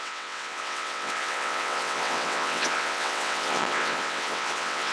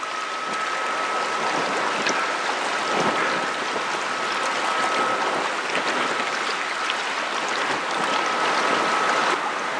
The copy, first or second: first